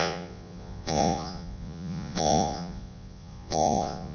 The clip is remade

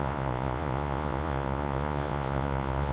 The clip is remade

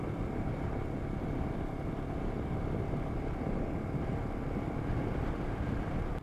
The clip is recorded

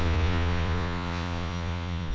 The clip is remade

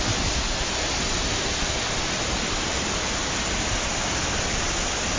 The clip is recorded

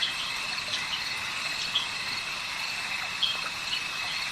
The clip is recorded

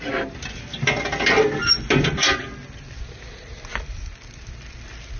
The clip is recorded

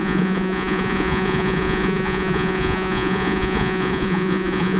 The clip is remade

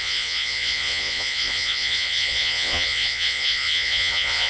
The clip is remade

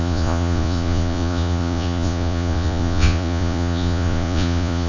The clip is remade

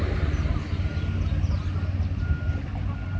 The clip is recorded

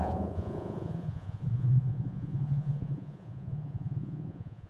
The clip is remade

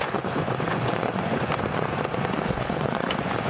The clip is remade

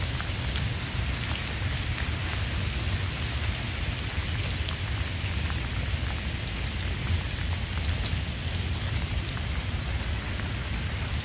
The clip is recorded